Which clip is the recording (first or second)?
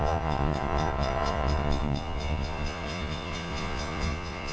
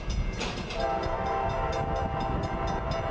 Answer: second